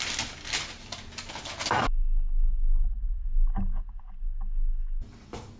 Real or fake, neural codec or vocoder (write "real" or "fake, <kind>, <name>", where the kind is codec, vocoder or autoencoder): real